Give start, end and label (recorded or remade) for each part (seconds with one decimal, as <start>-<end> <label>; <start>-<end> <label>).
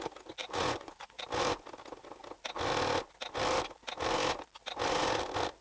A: 0.0-0.4 recorded; 0.4-1.2 remade; 1.2-5.6 recorded